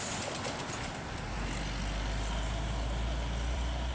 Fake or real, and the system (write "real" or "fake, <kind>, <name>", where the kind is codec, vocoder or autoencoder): fake, vocoder, BigVGAN v2